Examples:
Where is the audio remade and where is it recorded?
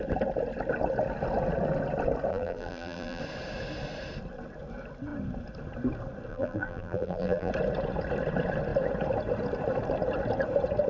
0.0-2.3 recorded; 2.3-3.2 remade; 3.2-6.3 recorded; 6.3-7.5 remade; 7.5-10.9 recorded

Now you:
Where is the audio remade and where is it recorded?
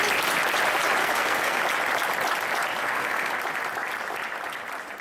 0.0-1.0 recorded; 1.0-1.6 remade; 1.6-2.8 recorded; 2.8-3.3 remade; 3.3-5.0 recorded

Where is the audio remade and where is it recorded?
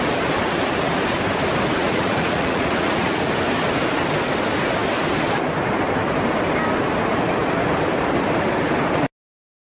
0.0-1.8 recorded; 1.8-3.3 remade; 3.3-9.7 recorded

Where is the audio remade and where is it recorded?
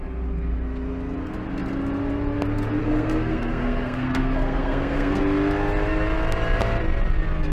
0.0-2.8 recorded; 2.8-5.2 remade; 5.2-7.5 recorded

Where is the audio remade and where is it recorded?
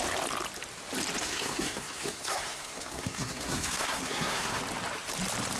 0.0-1.2 recorded; 1.2-4.6 remade; 4.6-5.6 recorded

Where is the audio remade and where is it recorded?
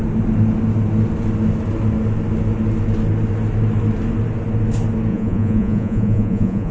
0.0-5.1 recorded; 5.1-6.7 remade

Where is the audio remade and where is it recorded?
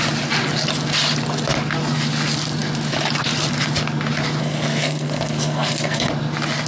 0.0-4.4 recorded; 4.4-6.1 remade; 6.1-6.7 recorded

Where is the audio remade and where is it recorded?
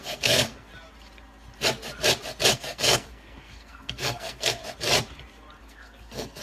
0.0-0.7 remade; 0.7-2.5 recorded; 2.5-4.6 remade; 4.6-5.6 recorded; 5.6-6.4 remade